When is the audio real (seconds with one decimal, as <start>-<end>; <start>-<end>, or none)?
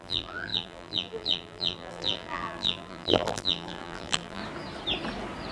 4.4-5.5